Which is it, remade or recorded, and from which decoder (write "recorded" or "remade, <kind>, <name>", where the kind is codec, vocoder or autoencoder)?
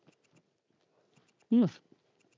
recorded